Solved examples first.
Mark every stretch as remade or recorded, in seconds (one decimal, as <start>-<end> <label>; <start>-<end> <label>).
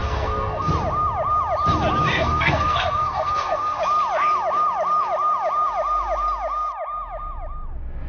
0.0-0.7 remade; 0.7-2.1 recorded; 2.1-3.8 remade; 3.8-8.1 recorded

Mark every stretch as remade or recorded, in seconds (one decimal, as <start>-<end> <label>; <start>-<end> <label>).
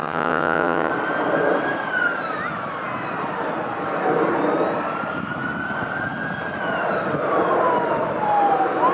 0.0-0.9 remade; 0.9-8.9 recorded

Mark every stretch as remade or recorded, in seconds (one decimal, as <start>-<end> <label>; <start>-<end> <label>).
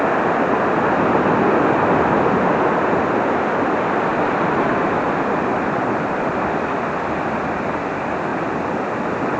0.0-4.1 recorded; 4.1-6.3 remade; 6.3-9.4 recorded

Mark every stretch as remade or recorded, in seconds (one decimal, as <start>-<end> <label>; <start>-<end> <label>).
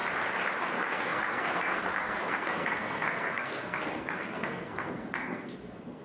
0.0-0.7 recorded; 0.7-6.0 remade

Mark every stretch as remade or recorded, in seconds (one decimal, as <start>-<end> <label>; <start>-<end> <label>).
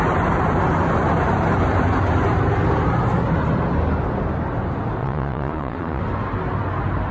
0.0-5.0 recorded; 5.0-6.0 remade; 6.0-7.1 recorded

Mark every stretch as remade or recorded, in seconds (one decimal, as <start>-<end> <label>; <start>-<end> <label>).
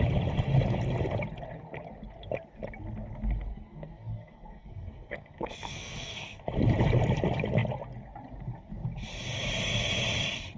0.0-3.5 recorded; 3.5-6.4 remade; 6.4-10.6 recorded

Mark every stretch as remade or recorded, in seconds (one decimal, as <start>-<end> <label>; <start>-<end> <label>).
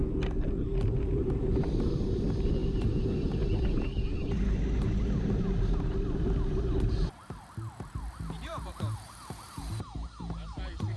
0.0-1.0 recorded; 1.0-2.6 remade; 2.6-5.2 recorded; 5.2-11.0 remade